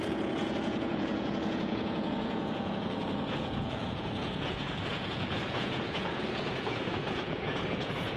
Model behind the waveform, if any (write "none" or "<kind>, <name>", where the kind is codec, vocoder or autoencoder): vocoder, Vocos